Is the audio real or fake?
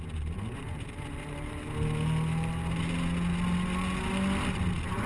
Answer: real